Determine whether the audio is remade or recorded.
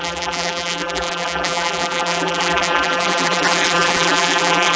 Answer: remade